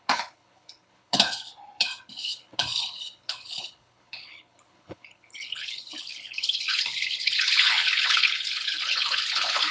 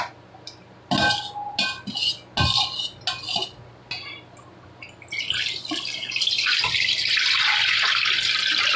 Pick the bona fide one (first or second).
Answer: second